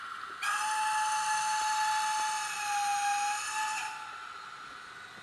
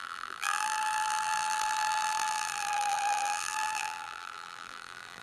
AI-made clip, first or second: second